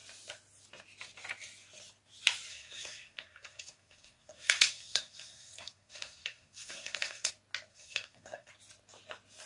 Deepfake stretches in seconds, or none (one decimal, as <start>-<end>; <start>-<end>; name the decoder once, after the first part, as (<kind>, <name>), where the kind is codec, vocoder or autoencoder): 2.5-7.3 (codec, SNAC); 7.7-8.5

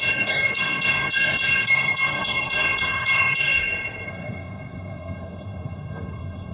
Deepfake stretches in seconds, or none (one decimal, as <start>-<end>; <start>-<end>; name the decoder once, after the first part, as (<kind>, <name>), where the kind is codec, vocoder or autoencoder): 0.0-6.5 (codec, SNAC)

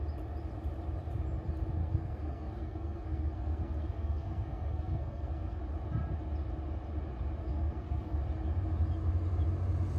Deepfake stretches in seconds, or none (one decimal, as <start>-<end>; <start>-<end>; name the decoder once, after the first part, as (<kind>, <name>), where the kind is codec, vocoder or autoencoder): 1.8-5.6 (codec, SNAC); 7.4-8.2

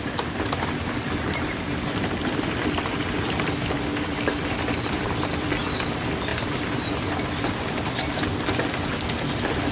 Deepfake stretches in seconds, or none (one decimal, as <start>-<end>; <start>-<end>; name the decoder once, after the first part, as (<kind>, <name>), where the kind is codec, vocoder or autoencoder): none

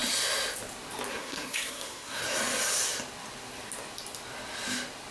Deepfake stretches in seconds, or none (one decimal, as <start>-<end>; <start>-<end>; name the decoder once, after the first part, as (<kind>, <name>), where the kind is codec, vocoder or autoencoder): 1.1-2.2 (codec, SNAC)

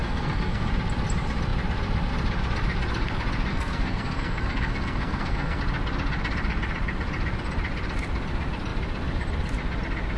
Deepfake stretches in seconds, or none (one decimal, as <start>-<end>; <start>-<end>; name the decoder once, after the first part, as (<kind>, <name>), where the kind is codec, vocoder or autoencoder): 0.0-0.7 (codec, SNAC); 3.5-5.6